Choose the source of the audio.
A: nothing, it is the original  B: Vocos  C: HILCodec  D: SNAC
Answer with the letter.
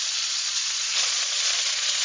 B